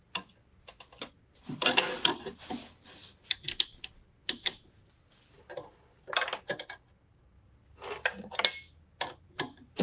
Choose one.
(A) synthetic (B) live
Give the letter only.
B